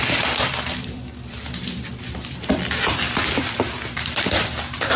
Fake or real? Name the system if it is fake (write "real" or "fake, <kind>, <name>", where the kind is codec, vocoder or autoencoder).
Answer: fake, vocoder, BigVGAN v2